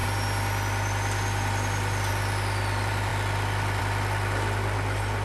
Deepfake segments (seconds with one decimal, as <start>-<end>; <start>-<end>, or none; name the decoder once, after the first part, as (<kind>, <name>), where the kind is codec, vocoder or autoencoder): none